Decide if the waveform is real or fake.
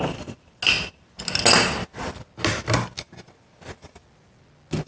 real